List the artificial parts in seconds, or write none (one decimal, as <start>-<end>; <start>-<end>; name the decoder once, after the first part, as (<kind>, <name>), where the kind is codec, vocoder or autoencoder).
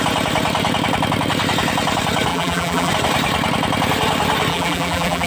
2.3-2.9 (vocoder, BigVGAN v2); 4.5-5.3